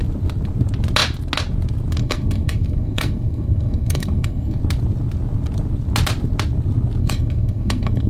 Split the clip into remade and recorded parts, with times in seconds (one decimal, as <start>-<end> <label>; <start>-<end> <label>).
0.0-2.0 recorded; 2.0-4.6 remade; 4.6-7.0 recorded; 7.0-8.1 remade